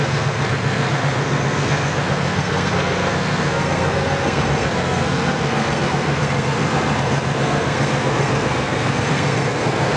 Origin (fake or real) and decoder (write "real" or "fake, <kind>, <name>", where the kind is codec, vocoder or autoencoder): fake, codec, SNAC